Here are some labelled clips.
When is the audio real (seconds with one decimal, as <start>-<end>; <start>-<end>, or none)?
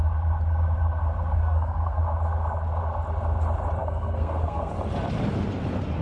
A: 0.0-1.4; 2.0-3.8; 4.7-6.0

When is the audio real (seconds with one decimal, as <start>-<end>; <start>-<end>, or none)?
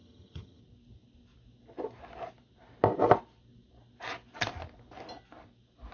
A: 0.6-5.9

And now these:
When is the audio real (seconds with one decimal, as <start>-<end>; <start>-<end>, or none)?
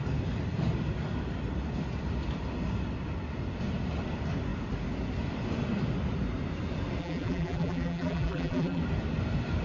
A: 0.0-7.0; 8.8-9.6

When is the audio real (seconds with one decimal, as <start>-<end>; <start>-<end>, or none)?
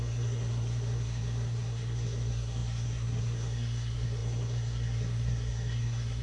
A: none